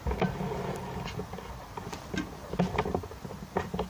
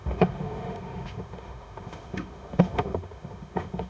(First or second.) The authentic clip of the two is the first